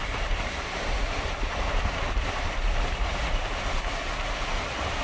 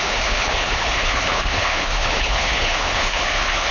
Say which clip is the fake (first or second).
second